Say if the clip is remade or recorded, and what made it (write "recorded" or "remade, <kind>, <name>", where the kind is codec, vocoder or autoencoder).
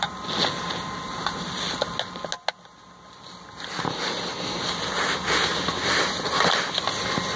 recorded